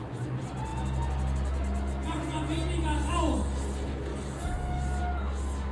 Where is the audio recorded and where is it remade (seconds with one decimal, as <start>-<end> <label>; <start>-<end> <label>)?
0.0-4.1 recorded; 4.1-5.0 remade; 5.0-5.7 recorded